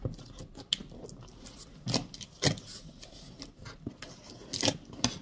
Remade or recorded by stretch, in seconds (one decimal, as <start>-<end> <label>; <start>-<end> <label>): 0.0-5.2 recorded